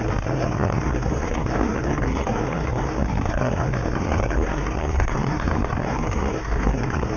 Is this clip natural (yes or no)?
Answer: no